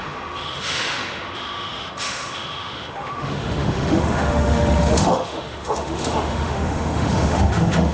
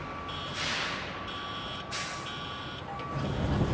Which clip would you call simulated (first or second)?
first